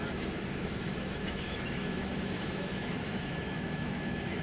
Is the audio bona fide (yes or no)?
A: no